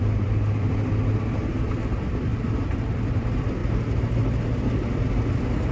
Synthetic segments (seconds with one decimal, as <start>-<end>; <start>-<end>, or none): none